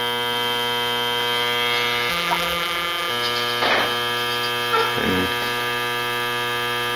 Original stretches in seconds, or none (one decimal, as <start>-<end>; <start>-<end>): 0.0-2.1; 3.1-7.0